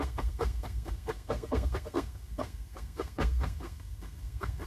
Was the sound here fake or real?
fake